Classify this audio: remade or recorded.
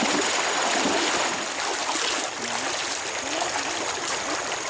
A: recorded